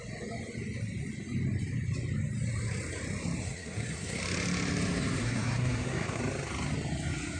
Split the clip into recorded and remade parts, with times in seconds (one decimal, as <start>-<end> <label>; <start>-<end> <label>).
0.0-3.4 recorded; 3.4-4.2 remade; 4.2-5.2 recorded; 5.2-6.2 remade; 6.2-7.4 recorded

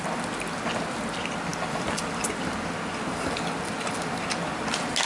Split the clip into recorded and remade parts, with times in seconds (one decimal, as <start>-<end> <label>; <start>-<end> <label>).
0.0-5.1 recorded

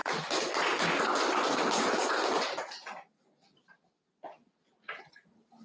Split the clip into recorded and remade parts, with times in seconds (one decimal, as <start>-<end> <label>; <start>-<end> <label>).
0.0-5.6 recorded

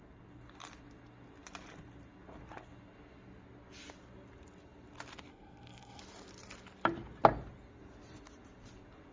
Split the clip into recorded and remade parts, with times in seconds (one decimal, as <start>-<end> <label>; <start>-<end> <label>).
0.0-5.3 recorded; 5.3-6.0 remade; 6.0-9.1 recorded

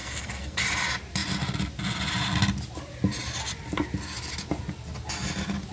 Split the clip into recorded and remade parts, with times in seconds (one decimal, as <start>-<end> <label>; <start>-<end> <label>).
0.0-0.6 remade; 0.6-5.7 recorded

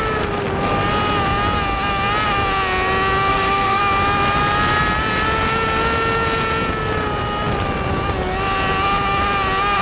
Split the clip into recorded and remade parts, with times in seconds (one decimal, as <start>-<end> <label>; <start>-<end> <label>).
0.0-3.3 recorded; 3.3-3.8 remade; 3.8-9.8 recorded

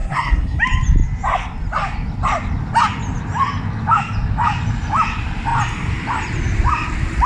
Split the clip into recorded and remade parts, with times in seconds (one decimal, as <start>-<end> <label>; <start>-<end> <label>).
0.0-0.6 remade; 0.6-7.3 recorded

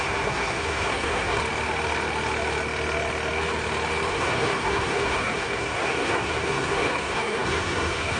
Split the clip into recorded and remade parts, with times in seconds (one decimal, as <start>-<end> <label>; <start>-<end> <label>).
0.0-1.4 remade; 1.4-4.1 recorded; 4.1-8.2 remade